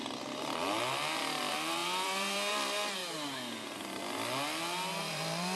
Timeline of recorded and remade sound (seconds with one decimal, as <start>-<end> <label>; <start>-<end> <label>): 0.0-1.2 recorded; 1.2-3.0 remade; 3.0-5.0 recorded; 5.0-5.6 remade